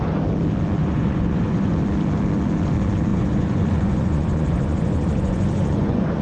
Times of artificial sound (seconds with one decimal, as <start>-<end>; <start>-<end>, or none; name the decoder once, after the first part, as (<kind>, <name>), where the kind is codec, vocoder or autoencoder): 0.8-1.7 (vocoder, Vocos); 3.1-6.2